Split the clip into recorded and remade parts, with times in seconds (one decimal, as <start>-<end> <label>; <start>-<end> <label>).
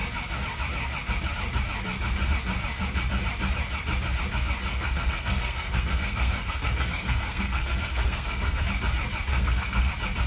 0.0-4.7 recorded; 4.7-8.6 remade; 8.6-9.3 recorded; 9.3-9.9 remade; 9.9-10.3 recorded